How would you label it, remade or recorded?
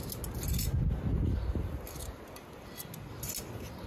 recorded